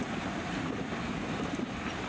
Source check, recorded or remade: recorded